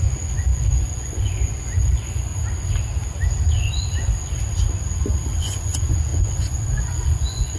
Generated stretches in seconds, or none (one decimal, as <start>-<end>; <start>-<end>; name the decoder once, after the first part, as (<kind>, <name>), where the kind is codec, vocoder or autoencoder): 0.0-2.3 (vocoder, Vocos); 5.4-7.6